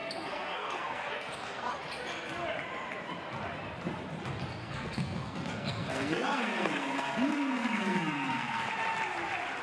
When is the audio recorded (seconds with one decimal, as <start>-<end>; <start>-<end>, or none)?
1.7-4.6; 8.7-9.6